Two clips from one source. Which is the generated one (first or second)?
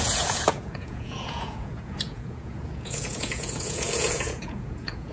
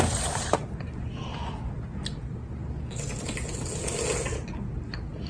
first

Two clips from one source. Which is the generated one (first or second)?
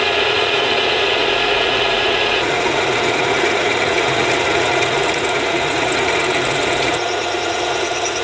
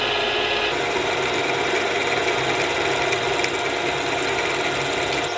first